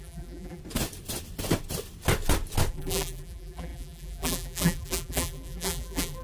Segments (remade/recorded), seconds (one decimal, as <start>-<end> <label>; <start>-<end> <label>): 0.0-0.6 remade; 0.6-2.7 recorded; 2.7-6.2 remade